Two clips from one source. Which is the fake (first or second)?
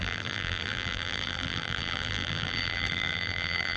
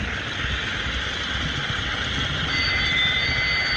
first